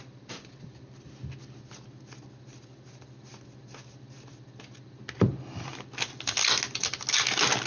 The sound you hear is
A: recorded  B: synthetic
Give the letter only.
A